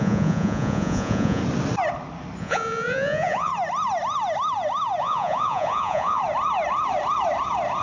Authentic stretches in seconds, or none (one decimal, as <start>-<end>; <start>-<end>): 1.4-2.4; 3.5-5.0; 6.2-7.8